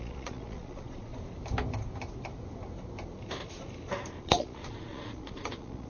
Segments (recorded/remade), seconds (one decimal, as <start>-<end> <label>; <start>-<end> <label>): 0.0-1.1 remade; 1.1-4.2 recorded; 4.2-5.9 remade